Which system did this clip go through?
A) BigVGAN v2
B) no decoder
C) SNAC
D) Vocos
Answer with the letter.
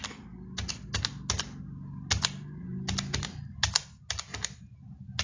B